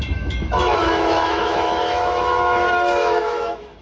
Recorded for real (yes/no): no